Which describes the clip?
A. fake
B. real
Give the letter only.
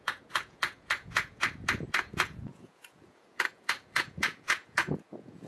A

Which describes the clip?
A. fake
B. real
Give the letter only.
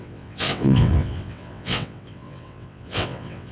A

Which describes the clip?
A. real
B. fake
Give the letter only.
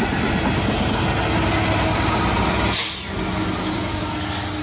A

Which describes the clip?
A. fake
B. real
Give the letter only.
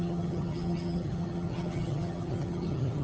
A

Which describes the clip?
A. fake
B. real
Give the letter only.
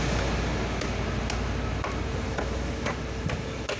B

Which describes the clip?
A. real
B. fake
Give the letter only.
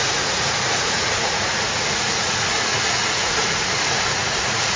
B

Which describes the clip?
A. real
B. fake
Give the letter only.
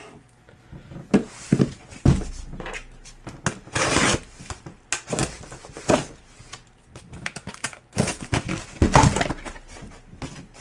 A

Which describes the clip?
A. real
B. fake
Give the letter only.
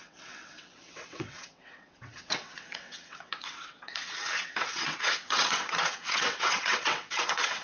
B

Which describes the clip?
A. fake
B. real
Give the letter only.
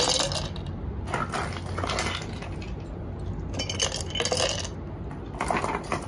B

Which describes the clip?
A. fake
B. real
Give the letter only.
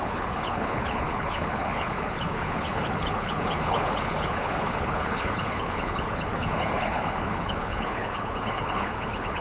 A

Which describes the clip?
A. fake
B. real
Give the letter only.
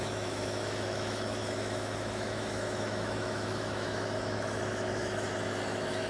A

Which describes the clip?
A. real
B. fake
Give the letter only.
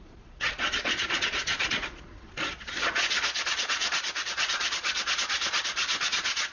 B